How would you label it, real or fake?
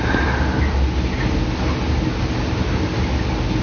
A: real